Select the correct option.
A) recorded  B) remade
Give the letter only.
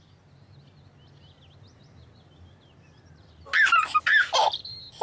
A